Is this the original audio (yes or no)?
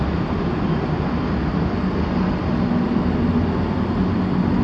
yes